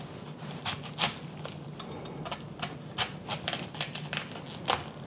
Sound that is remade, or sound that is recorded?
recorded